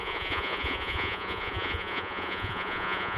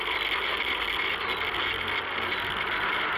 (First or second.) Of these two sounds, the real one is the second